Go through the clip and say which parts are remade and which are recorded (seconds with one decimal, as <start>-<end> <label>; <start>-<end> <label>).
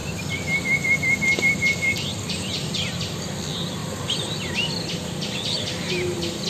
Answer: 0.0-2.7 remade; 2.7-3.8 recorded; 3.8-4.5 remade; 4.5-6.5 recorded